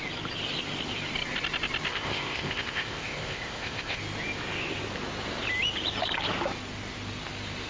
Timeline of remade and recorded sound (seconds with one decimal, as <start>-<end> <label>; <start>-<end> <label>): 0.0-1.9 recorded; 1.9-4.0 remade; 4.0-7.7 recorded